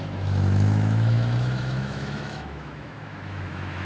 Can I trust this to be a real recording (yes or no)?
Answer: no